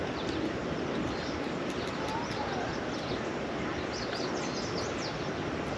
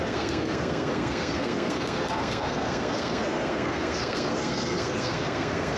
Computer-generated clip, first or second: second